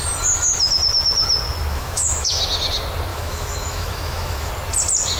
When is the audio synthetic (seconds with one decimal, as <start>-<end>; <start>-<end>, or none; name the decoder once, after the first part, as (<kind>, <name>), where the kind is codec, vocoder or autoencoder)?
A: 1.7-2.4 (autoencoder, DAC-VAE); 3.1-4.5